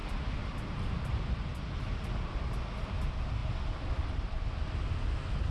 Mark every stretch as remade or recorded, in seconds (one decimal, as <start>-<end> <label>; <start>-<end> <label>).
0.0-0.9 remade; 0.9-1.5 recorded; 1.5-2.6 remade; 2.6-5.5 recorded